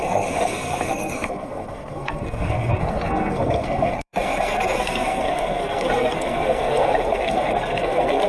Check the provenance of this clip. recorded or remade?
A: remade